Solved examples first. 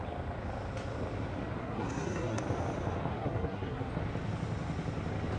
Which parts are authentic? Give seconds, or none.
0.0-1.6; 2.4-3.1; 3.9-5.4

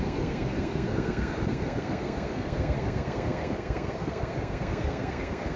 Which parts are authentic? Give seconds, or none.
none

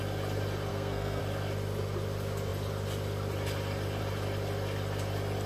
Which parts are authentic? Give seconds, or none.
0.0-0.7; 1.2-5.5

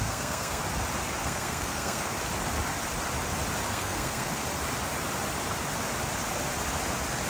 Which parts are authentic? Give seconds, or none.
0.6-1.2; 2.1-3.7; 4.4-7.3

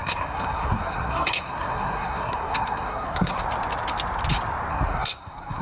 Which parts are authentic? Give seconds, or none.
3.4-4.7

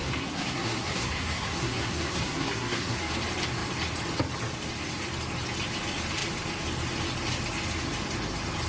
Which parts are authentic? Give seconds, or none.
3.1-8.7

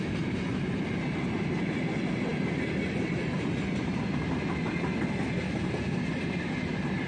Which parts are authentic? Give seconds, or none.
0.0-7.1

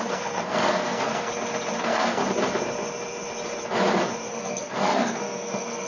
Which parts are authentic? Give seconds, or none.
1.3-1.8; 2.2-4.3